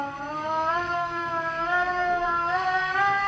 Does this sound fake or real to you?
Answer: fake